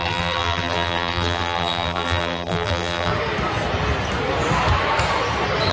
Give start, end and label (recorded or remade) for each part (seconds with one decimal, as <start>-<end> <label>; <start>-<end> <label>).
0.0-3.1 remade; 3.1-5.7 recorded